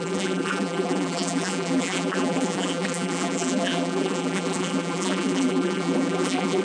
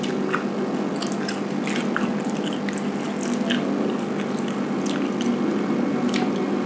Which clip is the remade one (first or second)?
first